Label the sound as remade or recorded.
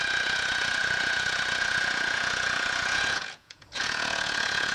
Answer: remade